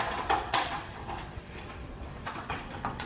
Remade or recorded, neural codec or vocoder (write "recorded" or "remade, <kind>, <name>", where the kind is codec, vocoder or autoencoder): remade, vocoder, WaveNeXt